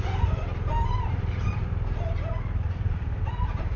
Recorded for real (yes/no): no